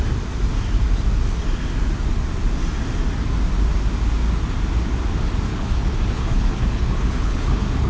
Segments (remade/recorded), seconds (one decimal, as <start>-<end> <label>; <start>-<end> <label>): 0.0-5.5 recorded; 5.5-7.9 remade